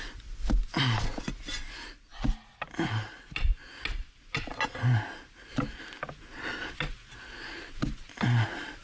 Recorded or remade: recorded